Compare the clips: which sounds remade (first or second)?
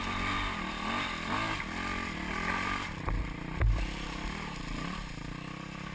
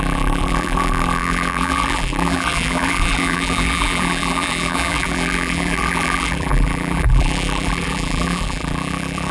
second